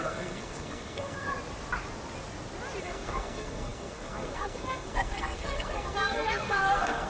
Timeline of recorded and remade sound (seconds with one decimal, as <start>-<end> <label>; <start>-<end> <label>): 0.0-1.3 remade; 1.3-2.8 recorded; 2.8-7.1 remade